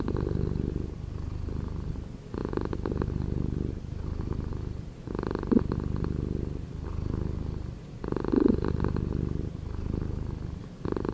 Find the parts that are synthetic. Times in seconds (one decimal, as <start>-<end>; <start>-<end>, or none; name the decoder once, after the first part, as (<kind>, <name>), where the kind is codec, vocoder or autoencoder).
none